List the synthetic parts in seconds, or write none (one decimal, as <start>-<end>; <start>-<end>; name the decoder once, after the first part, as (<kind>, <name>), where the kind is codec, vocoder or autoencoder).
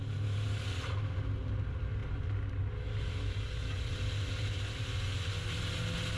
none